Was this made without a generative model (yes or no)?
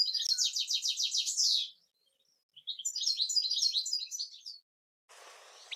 yes